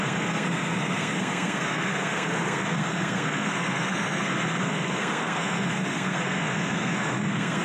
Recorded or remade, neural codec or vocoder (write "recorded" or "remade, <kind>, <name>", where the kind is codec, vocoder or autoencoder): remade, codec, SNAC